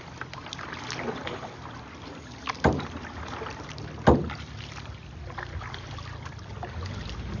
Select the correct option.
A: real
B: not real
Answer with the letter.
A